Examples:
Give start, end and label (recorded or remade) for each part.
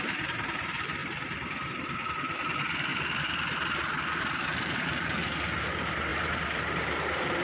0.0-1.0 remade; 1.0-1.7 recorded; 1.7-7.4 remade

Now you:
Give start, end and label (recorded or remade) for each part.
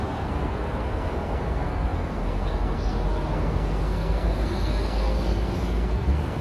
0.0-6.4 remade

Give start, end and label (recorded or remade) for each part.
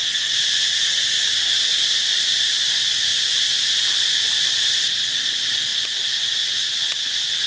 0.0-1.8 recorded; 1.8-7.5 remade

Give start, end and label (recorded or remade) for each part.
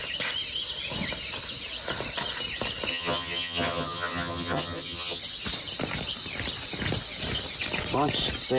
0.0-2.9 recorded; 2.9-5.2 remade; 5.2-8.6 recorded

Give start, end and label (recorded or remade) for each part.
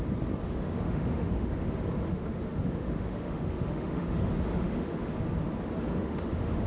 0.0-0.4 recorded; 0.4-1.7 remade; 1.7-2.1 recorded; 2.1-5.1 remade; 5.1-6.0 recorded; 6.0-6.7 remade